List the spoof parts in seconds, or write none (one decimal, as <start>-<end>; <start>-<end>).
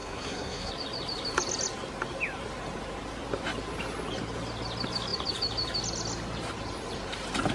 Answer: 0.0-0.7